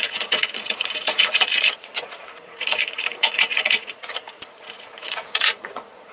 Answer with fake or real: fake